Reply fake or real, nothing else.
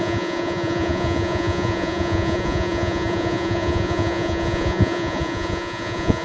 fake